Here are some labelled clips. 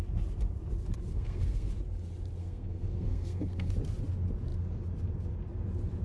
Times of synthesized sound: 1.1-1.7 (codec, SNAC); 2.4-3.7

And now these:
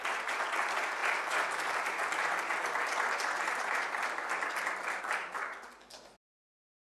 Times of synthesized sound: none

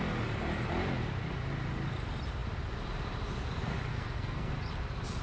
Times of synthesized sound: 3.9-4.5 (codec, SNAC)

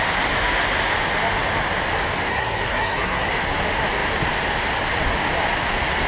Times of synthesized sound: 2.3-3.3 (codec, SNAC)

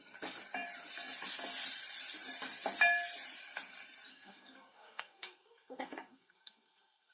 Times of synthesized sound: 4.1-7.1 (codec, SNAC)

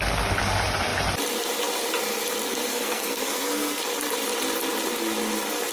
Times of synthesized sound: 2.7-3.8 (codec, SNAC)